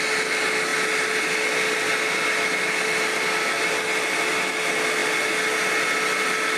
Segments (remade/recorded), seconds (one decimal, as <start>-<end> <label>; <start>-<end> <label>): 0.0-6.6 recorded